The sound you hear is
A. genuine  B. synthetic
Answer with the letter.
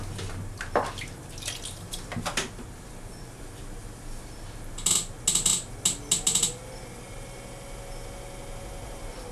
A